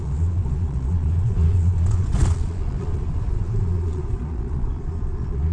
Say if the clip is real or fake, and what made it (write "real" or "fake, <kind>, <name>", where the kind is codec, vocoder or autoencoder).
fake, vocoder, Vocos